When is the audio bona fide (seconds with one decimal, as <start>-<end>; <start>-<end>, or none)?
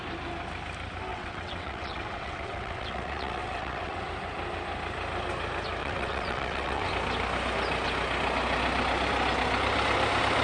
0.0-1.1; 4.0-5.8; 6.9-10.4